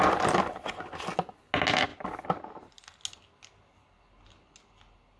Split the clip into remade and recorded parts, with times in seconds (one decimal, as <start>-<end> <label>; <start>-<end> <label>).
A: 0.0-5.2 recorded